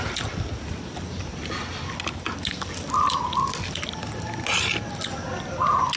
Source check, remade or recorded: recorded